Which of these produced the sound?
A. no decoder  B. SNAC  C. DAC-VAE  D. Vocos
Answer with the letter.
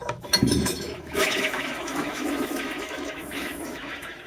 C